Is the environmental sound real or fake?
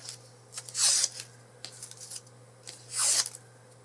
real